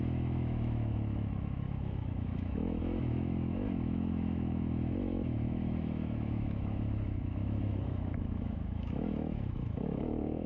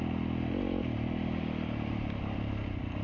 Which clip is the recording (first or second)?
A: second